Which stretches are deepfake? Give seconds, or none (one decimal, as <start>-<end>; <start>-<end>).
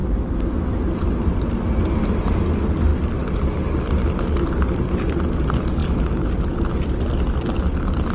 2.9-4.0